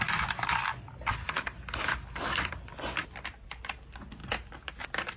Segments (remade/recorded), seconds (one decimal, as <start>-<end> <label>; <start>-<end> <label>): 0.0-5.2 recorded